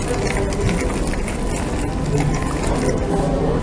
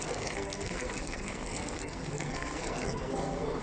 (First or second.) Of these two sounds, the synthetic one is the second